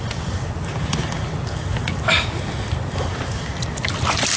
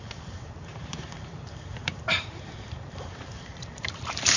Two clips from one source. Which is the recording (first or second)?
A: first